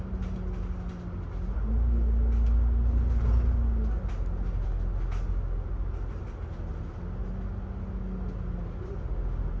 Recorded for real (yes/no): yes